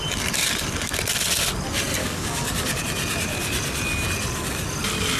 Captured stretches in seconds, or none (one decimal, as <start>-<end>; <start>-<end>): 0.0-2.0; 2.8-5.2